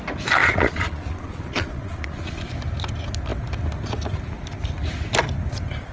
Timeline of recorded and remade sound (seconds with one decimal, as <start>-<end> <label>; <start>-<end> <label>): 0.0-0.4 recorded; 0.4-2.5 remade; 2.5-5.9 recorded